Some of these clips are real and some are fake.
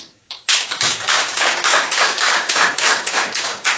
fake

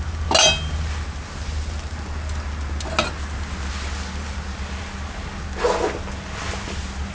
real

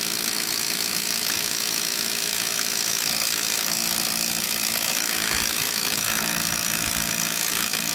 fake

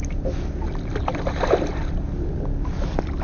real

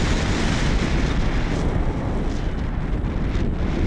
real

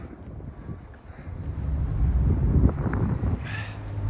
real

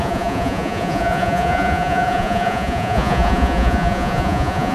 fake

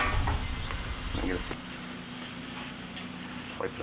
real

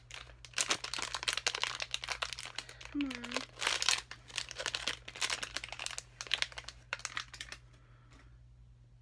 real